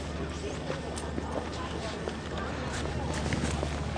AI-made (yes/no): no